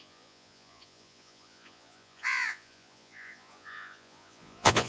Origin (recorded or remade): remade